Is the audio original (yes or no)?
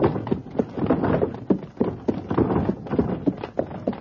yes